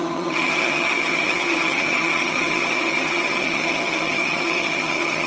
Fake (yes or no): yes